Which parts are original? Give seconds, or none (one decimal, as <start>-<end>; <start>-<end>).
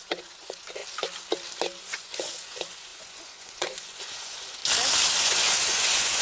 0.8-1.8; 4.6-5.2